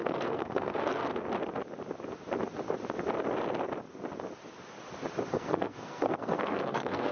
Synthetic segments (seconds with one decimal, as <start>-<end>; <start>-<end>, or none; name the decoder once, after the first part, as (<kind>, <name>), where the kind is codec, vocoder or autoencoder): 0.0-1.0 (codec, SNAC); 5.3-7.1